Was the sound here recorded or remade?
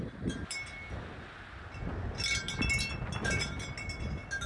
recorded